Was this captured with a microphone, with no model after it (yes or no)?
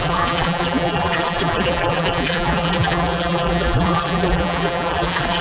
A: no